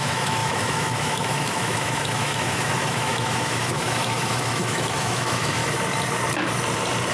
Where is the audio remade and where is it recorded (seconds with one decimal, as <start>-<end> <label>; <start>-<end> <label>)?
0.0-5.6 remade; 5.6-7.1 recorded